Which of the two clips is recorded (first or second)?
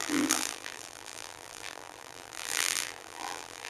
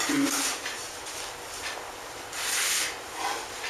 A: second